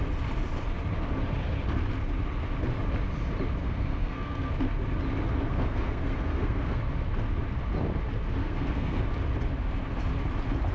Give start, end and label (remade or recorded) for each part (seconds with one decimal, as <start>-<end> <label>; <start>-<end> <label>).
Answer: 0.0-3.6 recorded; 3.6-4.5 remade; 4.5-5.5 recorded; 5.5-6.8 remade; 6.8-8.4 recorded; 8.4-9.0 remade; 9.0-10.7 recorded